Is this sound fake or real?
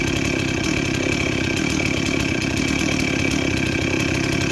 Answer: real